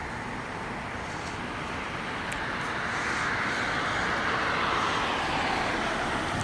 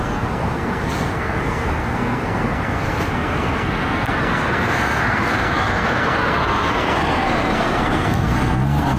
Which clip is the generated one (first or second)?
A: second